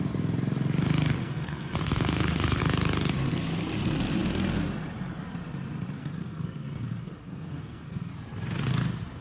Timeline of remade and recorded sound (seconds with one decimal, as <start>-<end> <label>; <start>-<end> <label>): 0.0-1.2 recorded; 1.2-2.6 remade; 2.6-6.0 recorded; 6.0-8.1 remade; 8.1-9.2 recorded

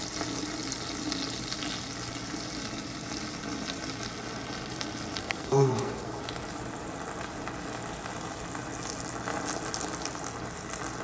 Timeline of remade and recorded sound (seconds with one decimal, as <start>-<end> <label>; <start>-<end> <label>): 0.0-5.2 recorded; 5.2-6.2 remade; 6.2-11.0 recorded

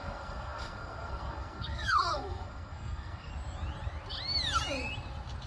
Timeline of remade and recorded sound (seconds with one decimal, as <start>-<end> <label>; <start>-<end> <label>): 0.0-3.3 remade; 3.3-5.5 recorded

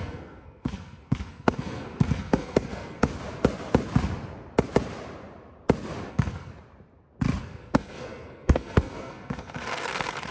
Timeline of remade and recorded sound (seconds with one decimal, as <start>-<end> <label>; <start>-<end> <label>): 0.0-3.1 remade; 3.1-6.1 recorded; 6.1-6.5 remade; 6.5-7.4 recorded; 7.4-10.3 remade

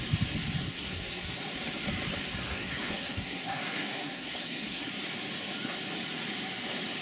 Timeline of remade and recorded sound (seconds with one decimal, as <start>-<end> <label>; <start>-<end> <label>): 0.0-0.6 recorded; 0.6-1.4 remade; 1.4-2.4 recorded; 2.4-4.9 remade; 4.9-7.0 recorded

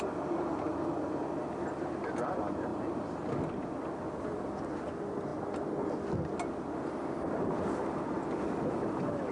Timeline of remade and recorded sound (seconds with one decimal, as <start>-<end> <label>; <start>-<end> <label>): 0.0-9.3 recorded

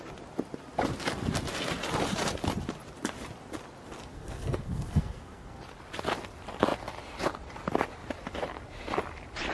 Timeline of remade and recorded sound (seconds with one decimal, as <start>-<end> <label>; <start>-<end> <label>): 0.0-4.1 recorded; 4.1-5.6 remade; 5.6-9.5 recorded

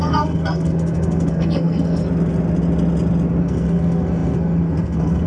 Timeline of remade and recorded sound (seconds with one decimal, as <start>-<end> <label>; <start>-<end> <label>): 0.0-2.0 remade; 2.0-3.4 recorded; 3.4-5.3 remade